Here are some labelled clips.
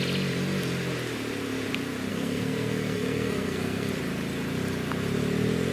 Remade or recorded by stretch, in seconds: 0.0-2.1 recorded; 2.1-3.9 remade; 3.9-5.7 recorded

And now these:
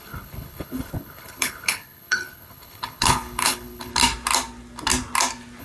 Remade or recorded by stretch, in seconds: 0.0-3.9 remade; 3.9-5.6 recorded